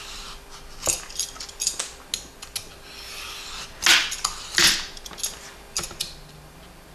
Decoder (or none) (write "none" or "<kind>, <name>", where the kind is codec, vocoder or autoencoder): none